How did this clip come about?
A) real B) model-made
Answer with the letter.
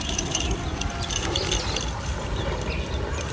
A